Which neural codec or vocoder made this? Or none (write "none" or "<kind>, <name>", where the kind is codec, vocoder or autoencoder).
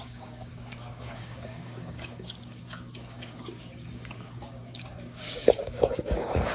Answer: codec, DAC